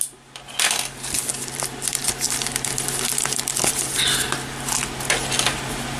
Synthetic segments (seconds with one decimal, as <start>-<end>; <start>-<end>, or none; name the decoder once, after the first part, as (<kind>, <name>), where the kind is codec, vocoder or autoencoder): none